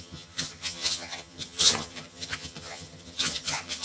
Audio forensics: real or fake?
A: fake